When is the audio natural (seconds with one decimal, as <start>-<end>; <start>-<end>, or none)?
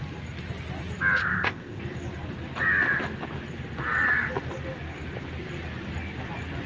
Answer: 0.0-1.2; 1.8-6.7